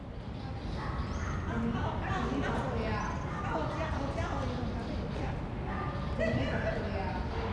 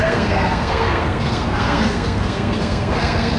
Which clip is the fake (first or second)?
second